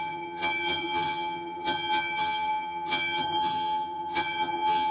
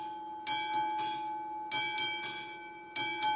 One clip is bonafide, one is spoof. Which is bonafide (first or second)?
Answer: second